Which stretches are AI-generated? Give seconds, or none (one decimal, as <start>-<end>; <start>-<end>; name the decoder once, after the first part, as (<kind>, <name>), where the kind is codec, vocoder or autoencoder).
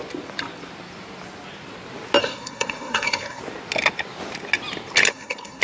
2.2-3.4 (codec, SNAC); 5.1-5.6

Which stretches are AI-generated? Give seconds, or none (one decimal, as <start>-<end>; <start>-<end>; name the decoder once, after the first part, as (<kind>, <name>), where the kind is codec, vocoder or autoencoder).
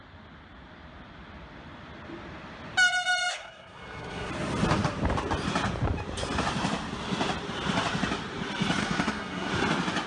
3.3-4.3 (codec, SNAC); 8.8-9.5